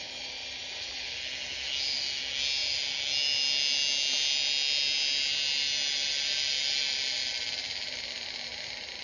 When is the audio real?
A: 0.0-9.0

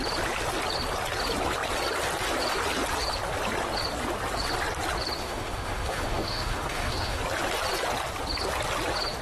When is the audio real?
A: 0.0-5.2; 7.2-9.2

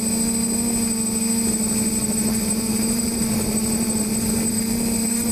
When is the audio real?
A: 0.0-2.0

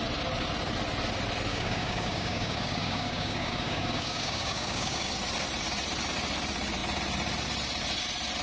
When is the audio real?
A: 0.0-1.5; 5.1-8.4

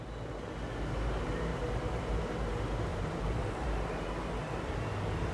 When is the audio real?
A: 0.0-1.5; 2.2-2.9; 4.1-5.3